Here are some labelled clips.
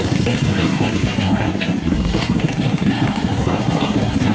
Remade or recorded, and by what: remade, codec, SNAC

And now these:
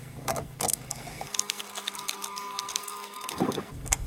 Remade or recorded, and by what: remade, codec, SNAC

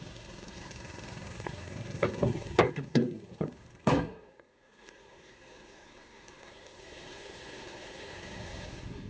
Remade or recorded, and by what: remade, codec, SNAC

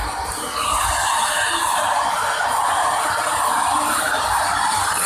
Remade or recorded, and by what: recorded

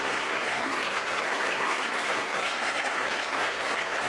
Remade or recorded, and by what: remade, codec, SNAC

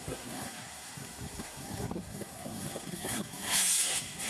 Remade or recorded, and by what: remade, codec, SNAC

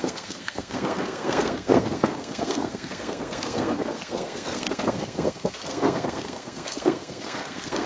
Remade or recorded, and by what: remade, codec, SNAC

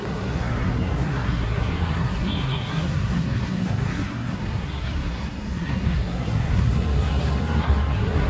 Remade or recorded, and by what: remade, codec, SNAC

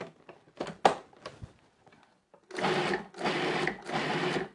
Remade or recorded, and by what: recorded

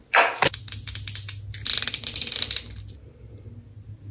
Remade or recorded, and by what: recorded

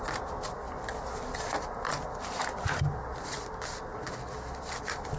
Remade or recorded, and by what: recorded